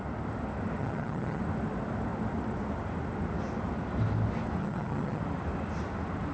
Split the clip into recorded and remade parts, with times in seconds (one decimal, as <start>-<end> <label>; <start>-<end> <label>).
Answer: 0.0-0.8 recorded; 0.8-1.4 remade; 1.4-4.6 recorded; 4.6-5.2 remade; 5.2-6.3 recorded